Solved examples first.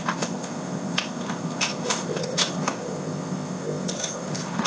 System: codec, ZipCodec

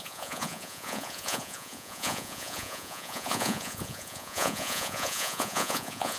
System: vocoder, Vocos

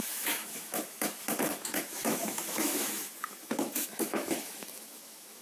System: autoencoder, DAC-VAE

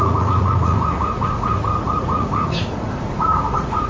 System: vocoder, Vocos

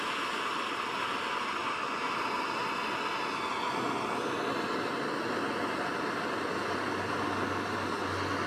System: none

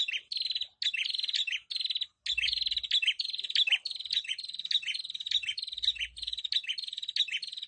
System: none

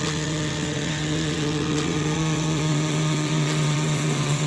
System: vocoder, WaveNeXt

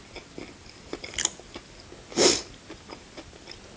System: none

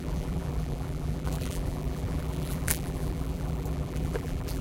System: vocoder, BigVGAN v2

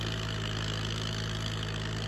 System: none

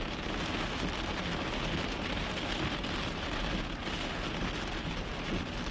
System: none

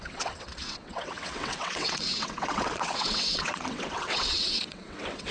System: vocoder, WaveNeXt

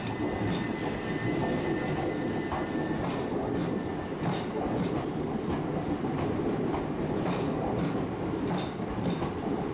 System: none